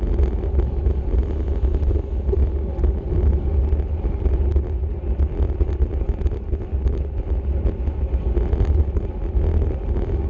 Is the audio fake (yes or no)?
no